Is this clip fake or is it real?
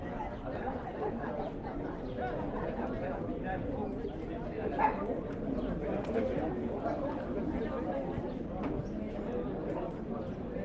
real